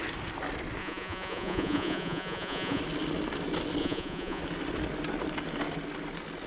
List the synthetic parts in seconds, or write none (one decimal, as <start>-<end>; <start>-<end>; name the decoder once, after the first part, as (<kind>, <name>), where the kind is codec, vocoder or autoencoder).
0.8-2.8 (vocoder, Vocos); 3.8-4.4